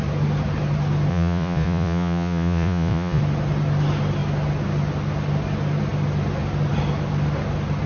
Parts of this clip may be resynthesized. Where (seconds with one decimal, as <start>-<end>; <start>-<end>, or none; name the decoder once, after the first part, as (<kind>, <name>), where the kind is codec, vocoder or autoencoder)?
1.1-3.2 (vocoder, Vocos)

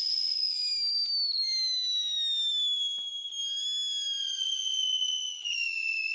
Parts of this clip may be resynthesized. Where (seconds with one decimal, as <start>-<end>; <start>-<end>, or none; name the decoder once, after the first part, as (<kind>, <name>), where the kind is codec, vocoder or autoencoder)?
0.0-0.6 (vocoder, Vocos); 4.2-6.1

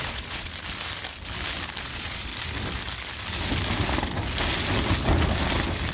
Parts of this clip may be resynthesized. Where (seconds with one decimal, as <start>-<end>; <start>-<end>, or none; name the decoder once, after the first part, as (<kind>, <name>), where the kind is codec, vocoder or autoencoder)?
0.0-0.5 (vocoder, Vocos); 1.8-2.3

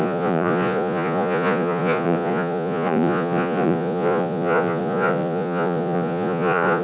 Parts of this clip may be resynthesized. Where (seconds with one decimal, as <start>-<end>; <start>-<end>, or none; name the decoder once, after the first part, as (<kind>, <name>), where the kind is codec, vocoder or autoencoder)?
0.0-6.8 (vocoder, Vocos)